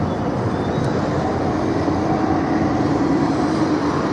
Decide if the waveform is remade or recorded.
recorded